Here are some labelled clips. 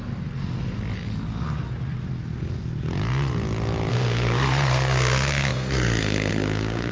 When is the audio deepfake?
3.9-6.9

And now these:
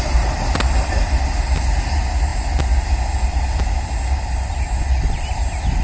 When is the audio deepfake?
none

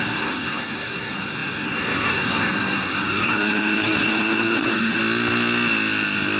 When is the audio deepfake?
0.0-5.0